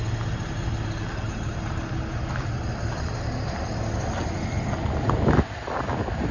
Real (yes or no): yes